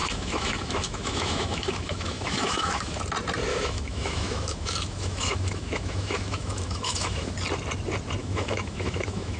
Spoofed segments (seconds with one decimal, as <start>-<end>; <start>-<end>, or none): 0.0-3.0; 3.5-7.3; 8.2-9.4